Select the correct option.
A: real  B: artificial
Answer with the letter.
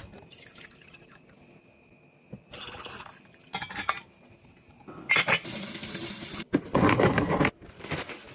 A